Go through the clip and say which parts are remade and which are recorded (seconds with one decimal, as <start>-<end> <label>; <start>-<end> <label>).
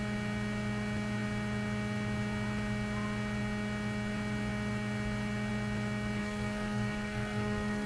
0.0-6.2 recorded; 6.2-7.9 remade